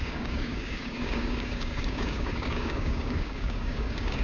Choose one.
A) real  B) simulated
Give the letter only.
B